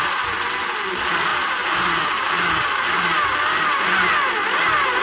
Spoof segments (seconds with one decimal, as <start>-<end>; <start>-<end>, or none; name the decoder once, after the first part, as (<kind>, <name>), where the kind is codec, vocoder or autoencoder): none